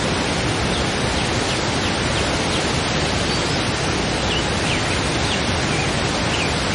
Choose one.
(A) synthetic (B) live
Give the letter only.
B